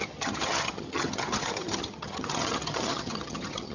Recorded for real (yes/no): no